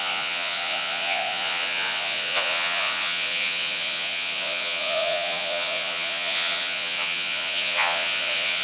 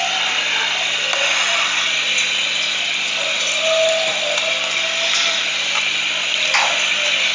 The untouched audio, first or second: second